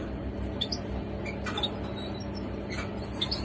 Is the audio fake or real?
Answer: real